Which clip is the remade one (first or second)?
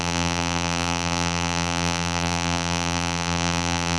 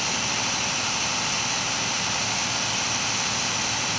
first